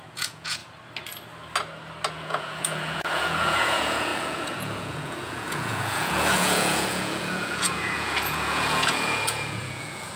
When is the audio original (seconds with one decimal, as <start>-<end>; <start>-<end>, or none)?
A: 0.6-2.1